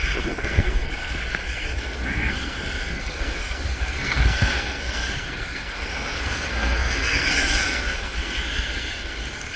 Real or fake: fake